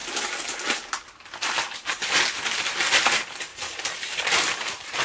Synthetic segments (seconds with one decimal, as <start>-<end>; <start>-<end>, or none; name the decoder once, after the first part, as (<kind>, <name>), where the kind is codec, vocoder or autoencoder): 0.0-2.0 (vocoder, BigVGAN v2); 3.5-5.0